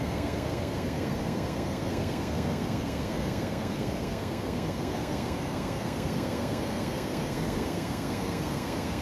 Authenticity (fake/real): fake